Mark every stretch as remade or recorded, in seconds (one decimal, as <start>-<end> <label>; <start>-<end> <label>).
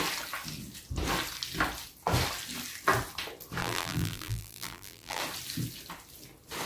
0.0-3.6 recorded; 3.6-5.2 remade; 5.2-6.7 recorded